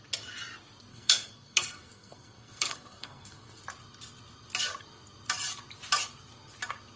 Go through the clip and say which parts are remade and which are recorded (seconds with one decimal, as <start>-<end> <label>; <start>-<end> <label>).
0.0-0.9 recorded; 0.9-3.6 remade; 3.6-7.0 recorded